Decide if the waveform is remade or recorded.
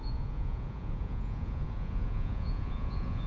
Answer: remade